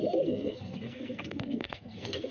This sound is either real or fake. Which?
fake